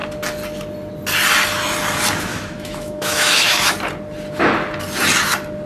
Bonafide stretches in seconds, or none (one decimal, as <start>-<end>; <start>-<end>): 0.0-2.3; 3.7-5.7